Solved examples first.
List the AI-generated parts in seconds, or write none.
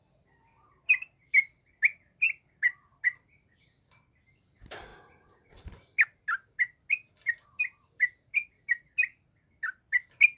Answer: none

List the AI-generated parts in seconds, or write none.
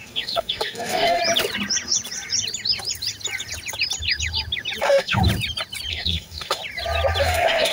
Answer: 0.0-1.2 (codec, DAC); 4.8-5.2; 5.9-6.6; 7.2-7.7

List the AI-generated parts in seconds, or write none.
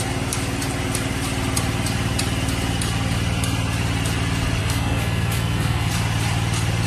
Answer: 4.6-5.9 (codec, SNAC)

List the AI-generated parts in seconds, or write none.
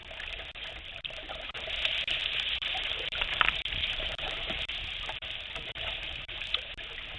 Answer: 2.2-6.5 (vocoder, BigVGAN v2)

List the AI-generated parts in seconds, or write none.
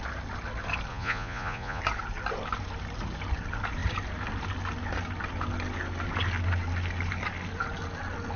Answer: 0.9-1.8 (vocoder, Vocos)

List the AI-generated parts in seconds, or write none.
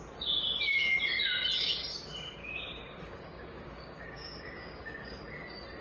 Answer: 2.4-5.2 (codec, DAC)